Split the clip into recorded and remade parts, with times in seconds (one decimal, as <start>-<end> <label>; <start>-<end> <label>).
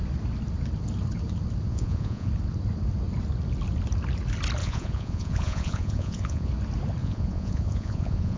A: 0.0-1.7 recorded; 1.7-2.3 remade; 2.3-4.6 recorded; 4.6-6.5 remade; 6.5-7.0 recorded; 7.0-8.4 remade